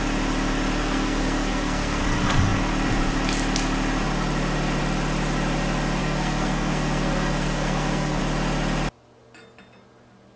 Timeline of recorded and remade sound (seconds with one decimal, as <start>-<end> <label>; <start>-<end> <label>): 0.0-0.8 recorded; 0.8-2.0 remade; 2.0-6.0 recorded; 6.0-8.2 remade; 8.2-10.4 recorded

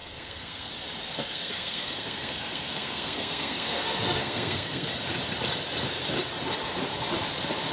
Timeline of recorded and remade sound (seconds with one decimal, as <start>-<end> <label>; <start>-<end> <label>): 0.0-0.7 remade; 0.7-1.1 recorded; 1.1-4.9 remade; 4.9-7.7 recorded

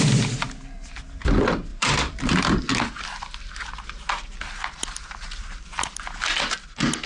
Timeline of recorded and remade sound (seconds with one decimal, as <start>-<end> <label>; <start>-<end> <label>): 0.0-1.7 recorded; 1.7-2.6 remade; 2.6-7.1 recorded

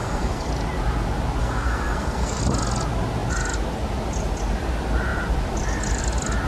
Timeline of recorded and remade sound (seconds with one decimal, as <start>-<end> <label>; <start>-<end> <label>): 0.0-0.5 remade; 0.5-1.4 recorded; 1.4-2.4 remade; 2.4-6.5 recorded

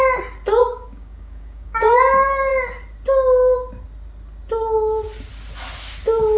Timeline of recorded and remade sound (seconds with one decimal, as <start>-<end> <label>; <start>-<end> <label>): 0.0-0.6 recorded; 0.6-1.8 remade; 1.8-6.4 recorded